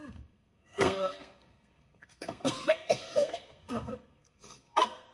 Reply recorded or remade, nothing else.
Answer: remade